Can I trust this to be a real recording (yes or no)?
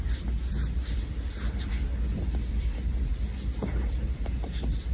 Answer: yes